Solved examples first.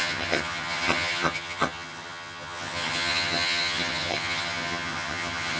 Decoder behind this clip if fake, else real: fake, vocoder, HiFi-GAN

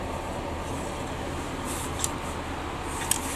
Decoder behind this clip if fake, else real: real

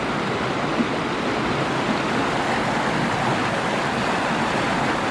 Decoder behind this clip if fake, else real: real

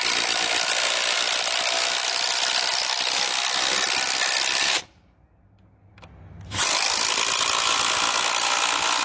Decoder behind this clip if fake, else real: real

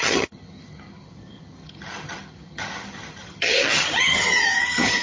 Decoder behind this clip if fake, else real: fake, vocoder, HiFi-GAN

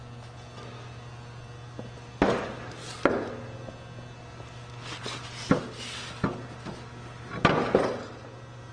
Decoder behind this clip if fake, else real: real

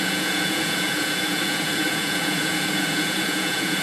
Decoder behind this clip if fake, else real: fake, vocoder, Vocos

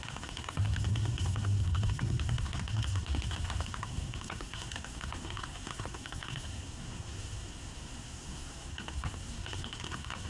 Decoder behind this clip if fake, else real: fake, codec, SNAC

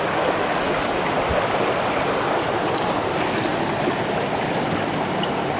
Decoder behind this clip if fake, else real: real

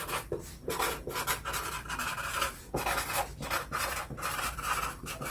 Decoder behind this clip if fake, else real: real